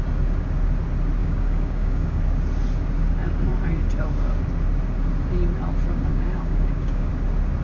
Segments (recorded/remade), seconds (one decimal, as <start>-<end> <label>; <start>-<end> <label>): 0.0-1.2 recorded; 1.2-2.2 remade; 2.2-6.1 recorded; 6.1-7.1 remade; 7.1-7.6 recorded